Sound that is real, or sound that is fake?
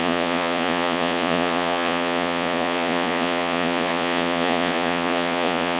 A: fake